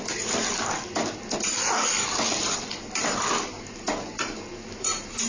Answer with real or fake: real